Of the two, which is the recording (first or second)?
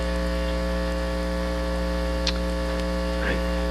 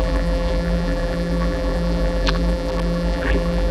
first